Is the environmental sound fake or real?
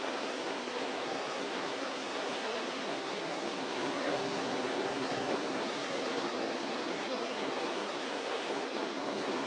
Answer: fake